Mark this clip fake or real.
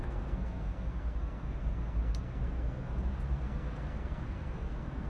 fake